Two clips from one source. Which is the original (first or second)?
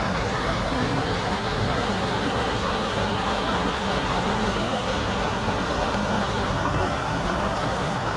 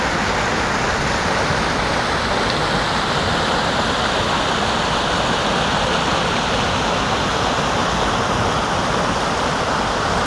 second